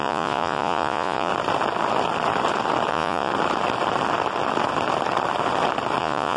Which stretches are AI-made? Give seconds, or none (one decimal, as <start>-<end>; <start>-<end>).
0.0-1.3; 2.9-3.3; 6.0-6.4